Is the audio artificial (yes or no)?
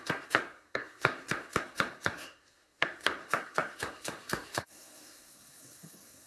yes